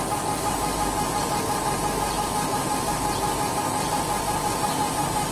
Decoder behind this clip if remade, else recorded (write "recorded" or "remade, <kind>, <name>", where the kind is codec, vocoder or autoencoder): recorded